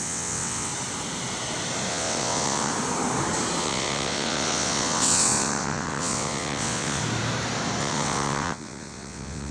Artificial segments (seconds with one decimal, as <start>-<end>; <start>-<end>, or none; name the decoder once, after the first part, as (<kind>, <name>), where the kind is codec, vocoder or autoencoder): 0.0-0.7 (vocoder, WaveNeXt); 1.9-2.7; 3.6-7.0; 7.8-9.5